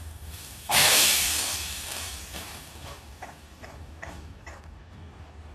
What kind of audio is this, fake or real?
fake